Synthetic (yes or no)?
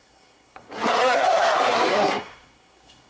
yes